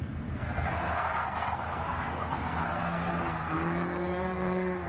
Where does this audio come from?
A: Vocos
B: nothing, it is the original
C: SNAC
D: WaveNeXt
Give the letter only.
C